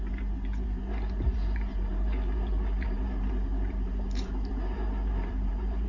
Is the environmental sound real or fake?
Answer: fake